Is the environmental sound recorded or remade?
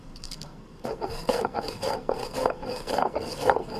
remade